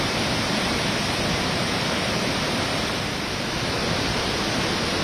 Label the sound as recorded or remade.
recorded